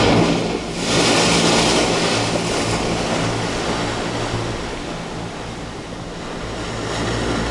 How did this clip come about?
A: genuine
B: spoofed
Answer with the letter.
A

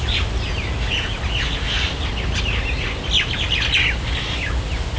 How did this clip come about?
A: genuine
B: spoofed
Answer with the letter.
A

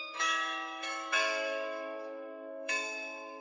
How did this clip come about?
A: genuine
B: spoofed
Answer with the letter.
B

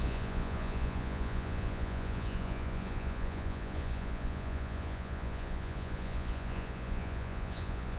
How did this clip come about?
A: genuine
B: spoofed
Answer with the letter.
B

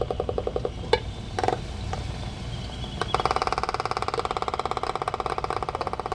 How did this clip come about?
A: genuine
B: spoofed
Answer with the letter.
A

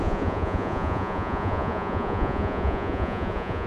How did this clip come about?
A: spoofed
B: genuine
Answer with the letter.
A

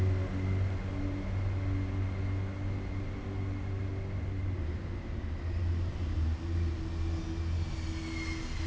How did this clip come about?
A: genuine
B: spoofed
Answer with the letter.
A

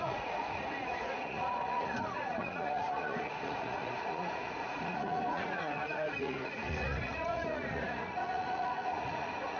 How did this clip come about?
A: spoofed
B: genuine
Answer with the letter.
A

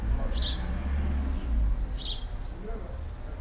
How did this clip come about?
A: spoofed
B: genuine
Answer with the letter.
B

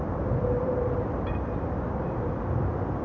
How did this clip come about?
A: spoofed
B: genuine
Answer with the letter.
B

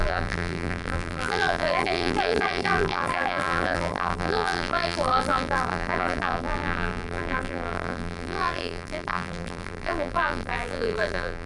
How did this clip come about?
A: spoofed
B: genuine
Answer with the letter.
A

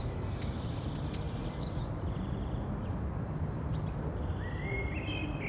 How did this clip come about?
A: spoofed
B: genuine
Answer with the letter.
B